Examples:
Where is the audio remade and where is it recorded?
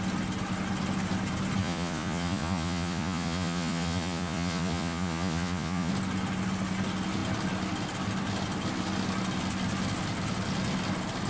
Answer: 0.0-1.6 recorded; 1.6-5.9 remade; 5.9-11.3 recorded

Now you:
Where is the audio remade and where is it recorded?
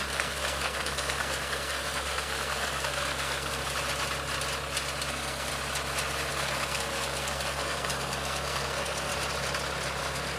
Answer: 0.0-3.6 remade; 3.6-5.1 recorded; 5.1-5.5 remade; 5.5-6.3 recorded; 6.3-9.1 remade; 9.1-10.0 recorded; 10.0-10.4 remade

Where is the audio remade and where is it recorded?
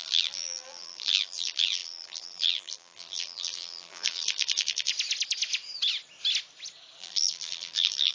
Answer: 0.0-4.9 remade; 4.9-7.0 recorded; 7.0-8.1 remade